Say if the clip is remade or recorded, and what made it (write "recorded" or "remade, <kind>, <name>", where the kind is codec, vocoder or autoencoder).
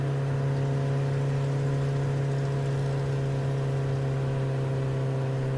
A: recorded